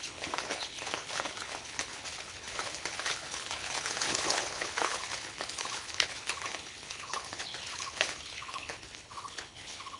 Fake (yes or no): yes